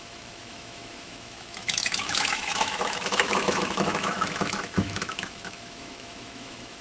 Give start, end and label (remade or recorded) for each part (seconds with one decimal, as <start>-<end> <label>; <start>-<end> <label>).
0.0-6.8 remade